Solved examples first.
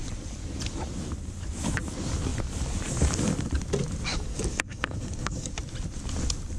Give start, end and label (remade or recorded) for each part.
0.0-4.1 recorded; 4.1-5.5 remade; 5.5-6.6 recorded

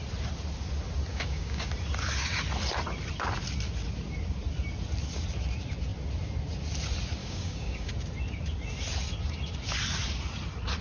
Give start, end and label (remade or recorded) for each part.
0.0-1.1 recorded; 1.1-1.7 remade; 1.7-7.2 recorded; 7.2-7.9 remade; 7.9-10.8 recorded

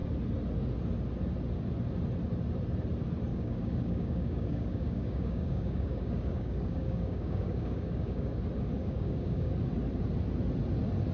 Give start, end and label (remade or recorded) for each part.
0.0-3.3 recorded; 3.3-8.4 remade; 8.4-8.8 recorded; 8.8-9.5 remade; 9.5-11.1 recorded

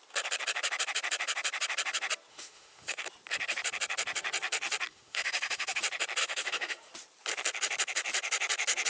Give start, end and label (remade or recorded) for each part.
0.0-2.3 recorded; 2.3-3.0 remade; 3.0-4.9 recorded; 4.9-5.8 remade; 5.8-6.2 recorded; 6.2-6.9 remade; 6.9-8.9 recorded

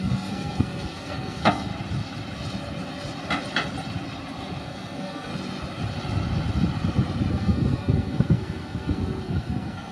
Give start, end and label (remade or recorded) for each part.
0.0-1.7 remade; 1.7-4.6 recorded; 4.6-5.3 remade; 5.3-7.3 recorded; 7.3-9.9 remade